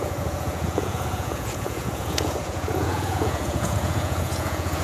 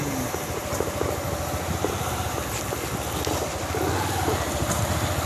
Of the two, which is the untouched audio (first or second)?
second